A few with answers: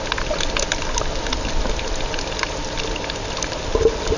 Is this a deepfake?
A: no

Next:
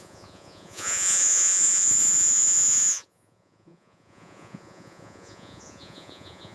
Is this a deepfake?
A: yes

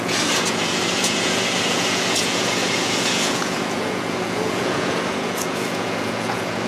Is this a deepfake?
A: yes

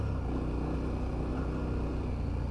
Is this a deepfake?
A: no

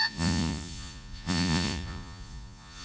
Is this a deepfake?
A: yes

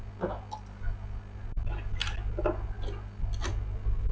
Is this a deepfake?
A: no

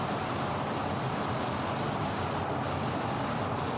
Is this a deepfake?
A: no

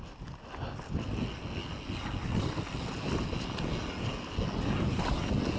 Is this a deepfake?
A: no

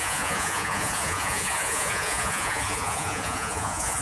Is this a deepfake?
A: yes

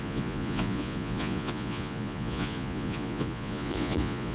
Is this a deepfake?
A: yes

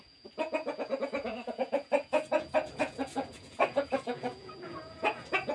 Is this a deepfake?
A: yes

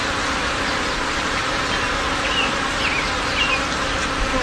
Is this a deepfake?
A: no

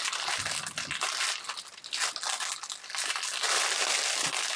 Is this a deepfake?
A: no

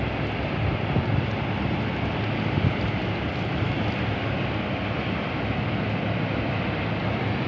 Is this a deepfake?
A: no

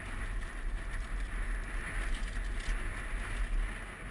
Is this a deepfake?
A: no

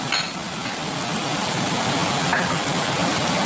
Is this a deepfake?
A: no